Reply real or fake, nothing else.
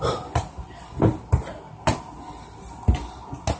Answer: real